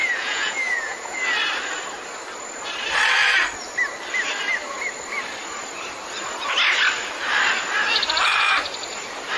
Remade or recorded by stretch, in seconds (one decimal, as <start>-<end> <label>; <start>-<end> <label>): 0.0-1.2 remade; 1.2-9.4 recorded